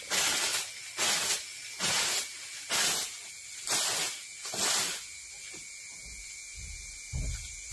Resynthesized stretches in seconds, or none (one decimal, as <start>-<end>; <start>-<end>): none